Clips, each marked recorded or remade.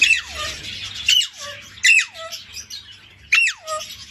recorded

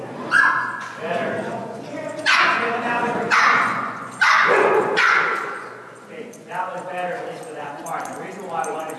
remade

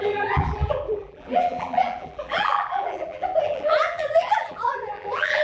remade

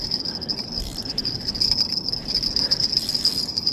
recorded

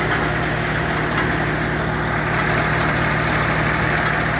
recorded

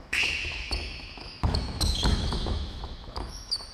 remade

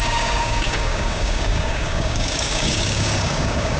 remade